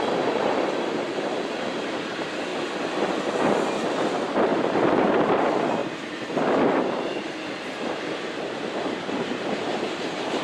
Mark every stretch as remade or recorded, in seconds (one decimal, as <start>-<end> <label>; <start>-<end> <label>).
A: 0.0-2.5 remade; 2.5-3.4 recorded; 3.4-5.8 remade; 5.8-8.4 recorded; 8.4-10.4 remade